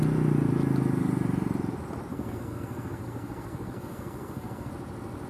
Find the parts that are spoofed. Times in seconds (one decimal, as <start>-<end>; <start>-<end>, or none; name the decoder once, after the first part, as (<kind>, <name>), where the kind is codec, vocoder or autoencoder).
2.1-4.7 (codec, SNAC)